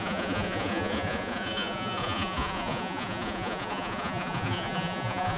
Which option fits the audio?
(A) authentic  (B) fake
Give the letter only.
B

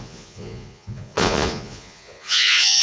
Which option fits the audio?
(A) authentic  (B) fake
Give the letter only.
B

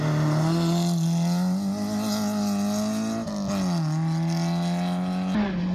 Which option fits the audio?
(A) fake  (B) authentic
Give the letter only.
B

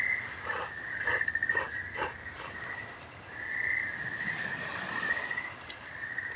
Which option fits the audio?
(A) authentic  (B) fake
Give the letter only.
A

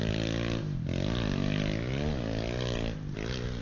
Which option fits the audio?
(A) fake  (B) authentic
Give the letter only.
B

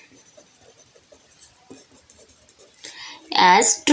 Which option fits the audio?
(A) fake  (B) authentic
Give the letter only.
B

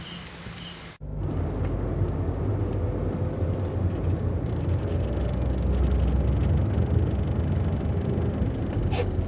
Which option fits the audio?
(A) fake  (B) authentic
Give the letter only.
B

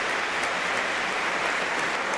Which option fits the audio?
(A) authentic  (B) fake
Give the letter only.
A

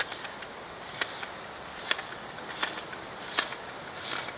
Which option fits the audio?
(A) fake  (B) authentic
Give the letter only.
B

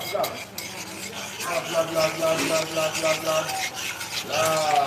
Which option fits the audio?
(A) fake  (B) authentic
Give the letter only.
B